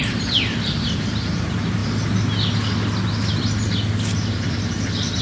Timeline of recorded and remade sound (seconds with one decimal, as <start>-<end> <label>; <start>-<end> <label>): 0.0-5.2 recorded